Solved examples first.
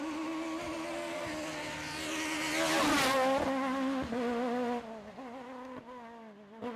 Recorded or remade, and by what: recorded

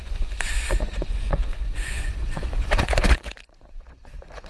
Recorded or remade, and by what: remade, vocoder, Vocos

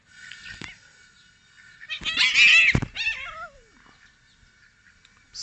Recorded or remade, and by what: recorded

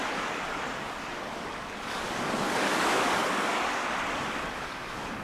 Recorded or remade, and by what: remade, codec, DAC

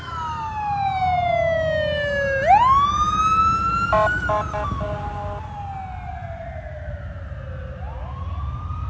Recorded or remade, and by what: recorded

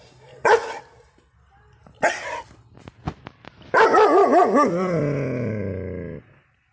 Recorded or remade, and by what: recorded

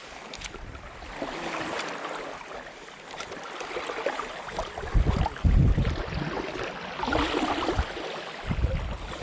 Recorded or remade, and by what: recorded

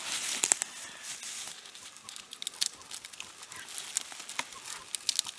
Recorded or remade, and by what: recorded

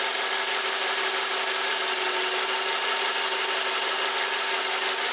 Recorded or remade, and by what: recorded